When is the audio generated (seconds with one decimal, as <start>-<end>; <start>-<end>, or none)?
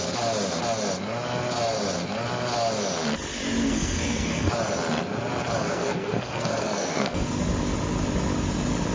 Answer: 3.6-4.5; 5.6-7.3